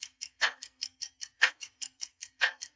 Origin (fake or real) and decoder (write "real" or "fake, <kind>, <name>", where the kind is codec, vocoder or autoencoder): fake, codec, SNAC